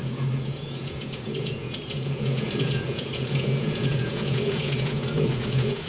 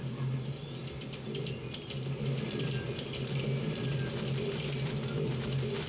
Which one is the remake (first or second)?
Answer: first